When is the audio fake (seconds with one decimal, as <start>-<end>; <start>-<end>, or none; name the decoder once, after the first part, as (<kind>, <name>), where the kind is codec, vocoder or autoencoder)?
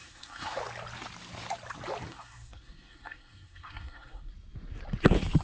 0.0-0.6 (codec, SNAC); 2.1-4.3